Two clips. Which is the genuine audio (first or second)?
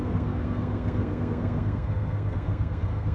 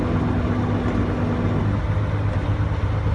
second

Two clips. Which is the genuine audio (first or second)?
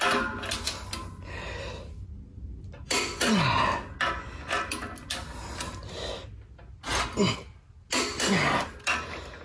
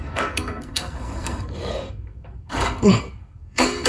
first